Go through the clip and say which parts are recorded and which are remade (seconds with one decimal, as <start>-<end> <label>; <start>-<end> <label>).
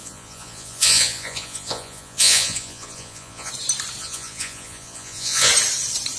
0.0-3.5 remade; 3.5-4.0 recorded; 4.0-5.5 remade; 5.5-6.2 recorded